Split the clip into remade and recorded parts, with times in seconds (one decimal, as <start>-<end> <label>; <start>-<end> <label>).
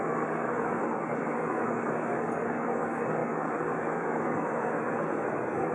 0.0-5.7 remade